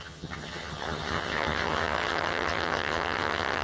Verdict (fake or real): fake